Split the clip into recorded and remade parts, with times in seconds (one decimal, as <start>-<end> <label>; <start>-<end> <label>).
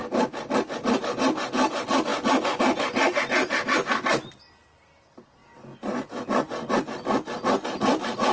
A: 0.0-1.0 remade; 1.0-8.3 recorded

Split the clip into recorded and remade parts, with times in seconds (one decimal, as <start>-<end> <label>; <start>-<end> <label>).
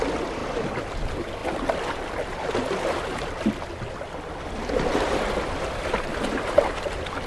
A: 0.0-7.3 recorded